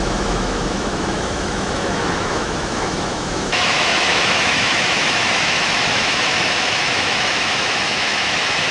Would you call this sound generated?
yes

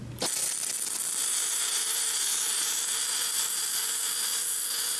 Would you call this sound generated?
no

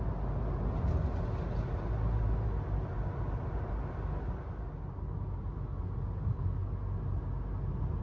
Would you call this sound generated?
no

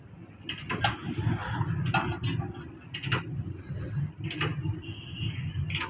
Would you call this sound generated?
no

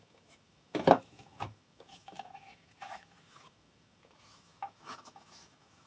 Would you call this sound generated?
yes